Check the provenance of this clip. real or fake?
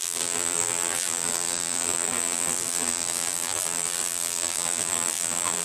fake